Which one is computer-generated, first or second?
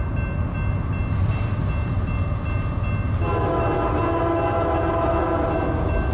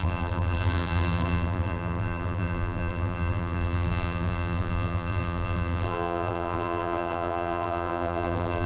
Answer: second